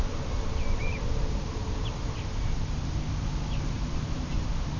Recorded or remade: remade